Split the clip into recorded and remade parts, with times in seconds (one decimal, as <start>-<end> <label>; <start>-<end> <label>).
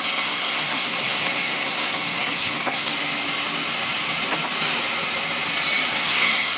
0.0-2.9 remade; 2.9-5.9 recorded; 5.9-6.6 remade